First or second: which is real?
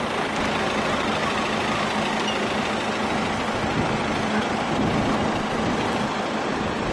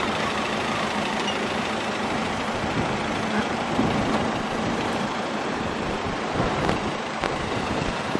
first